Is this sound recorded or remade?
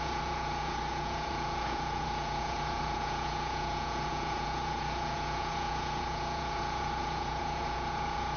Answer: remade